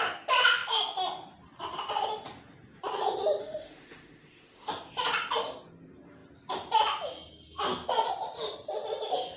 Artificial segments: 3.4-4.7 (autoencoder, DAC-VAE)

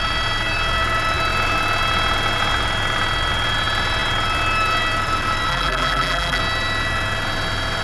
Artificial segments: 5.5-6.4 (vocoder, BigVGAN v2)

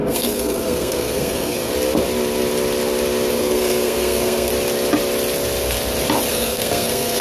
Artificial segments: 0.0-1.7 (codec, SNAC); 3.3-4.5; 6.3-7.2

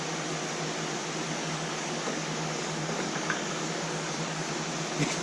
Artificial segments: 1.4-4.5 (codec, DAC)

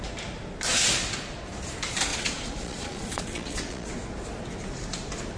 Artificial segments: 2.1-3.9 (vocoder, Vocos)